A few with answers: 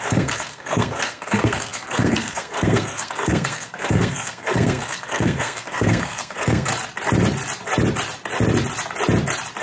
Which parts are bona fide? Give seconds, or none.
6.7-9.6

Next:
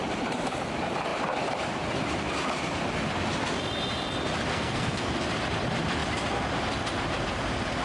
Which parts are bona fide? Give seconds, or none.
0.0-4.5; 5.1-7.8

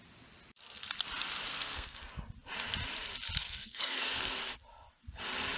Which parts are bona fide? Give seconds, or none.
0.0-1.5; 2.2-3.4; 4.4-5.6

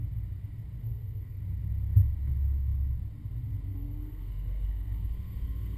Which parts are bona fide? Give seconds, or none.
0.0-0.8; 1.4-3.7

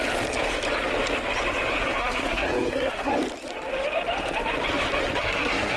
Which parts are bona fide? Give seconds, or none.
0.0-2.0; 3.1-5.2